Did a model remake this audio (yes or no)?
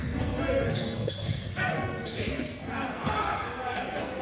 yes